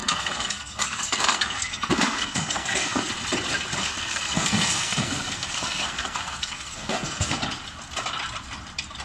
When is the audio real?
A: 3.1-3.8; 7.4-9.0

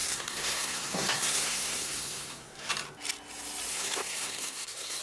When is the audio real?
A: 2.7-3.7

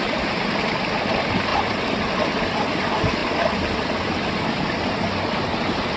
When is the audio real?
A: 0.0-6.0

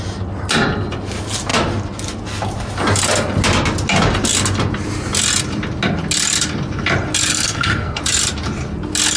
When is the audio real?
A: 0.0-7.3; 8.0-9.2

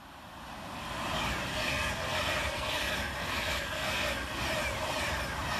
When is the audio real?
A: 0.0-1.5; 4.4-5.6

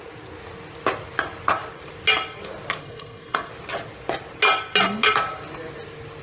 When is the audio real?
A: 0.0-2.8; 3.5-6.2

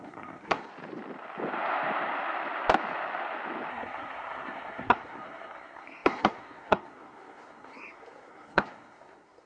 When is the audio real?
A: 0.7-3.7